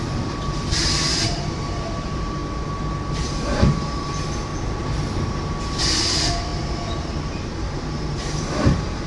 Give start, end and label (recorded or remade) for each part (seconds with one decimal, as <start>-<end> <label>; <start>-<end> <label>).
0.0-2.4 remade; 2.4-3.1 recorded; 3.1-4.5 remade; 4.5-6.0 recorded; 6.0-9.1 remade